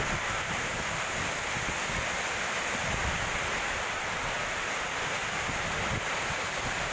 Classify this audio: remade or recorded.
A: recorded